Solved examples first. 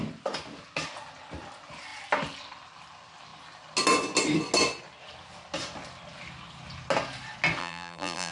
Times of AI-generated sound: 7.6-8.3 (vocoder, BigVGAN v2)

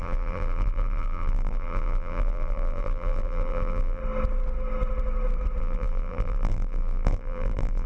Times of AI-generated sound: 0.0-4.0 (vocoder, BigVGAN v2); 5.6-7.9

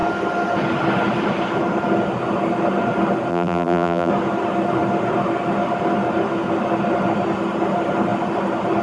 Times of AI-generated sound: 3.3-4.1 (vocoder, BigVGAN v2)

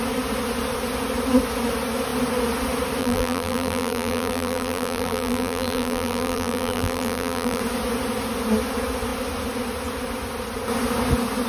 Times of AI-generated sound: 3.0-7.6 (vocoder, BigVGAN v2)

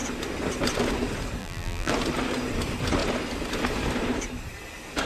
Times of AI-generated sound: 1.4-1.9 (vocoder, BigVGAN v2)